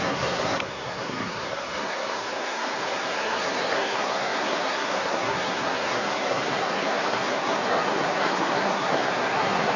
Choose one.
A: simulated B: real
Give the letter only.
A